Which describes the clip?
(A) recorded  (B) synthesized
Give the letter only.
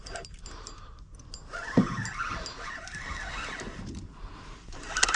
A